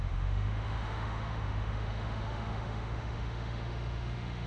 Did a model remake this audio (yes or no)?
yes